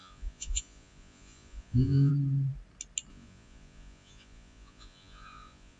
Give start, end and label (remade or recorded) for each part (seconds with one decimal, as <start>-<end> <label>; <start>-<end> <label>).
0.0-2.1 remade; 2.1-3.1 recorded; 3.1-5.8 remade